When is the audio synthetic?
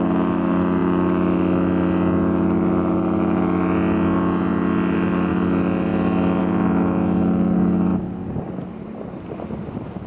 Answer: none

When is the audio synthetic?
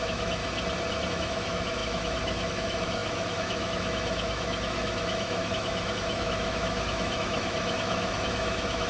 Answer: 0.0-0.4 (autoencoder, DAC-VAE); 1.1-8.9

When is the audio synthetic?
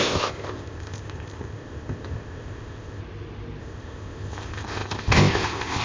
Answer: 0.0-3.0 (codec, ZipCodec); 3.6-5.8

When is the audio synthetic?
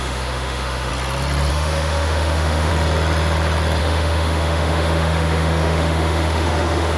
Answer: 0.0-0.9 (autoencoder, DAC-VAE); 1.5-2.7; 3.8-7.0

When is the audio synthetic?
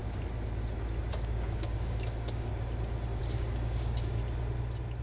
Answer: 1.1-2.5 (codec, DAC); 3.2-4.2